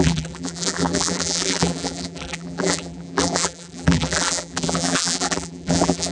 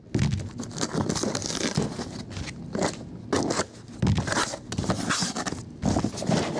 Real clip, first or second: second